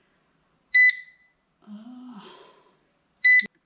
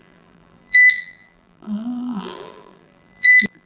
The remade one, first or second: second